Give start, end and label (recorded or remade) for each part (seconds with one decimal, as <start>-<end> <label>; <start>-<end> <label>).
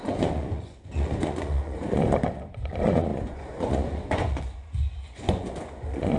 0.0-6.2 remade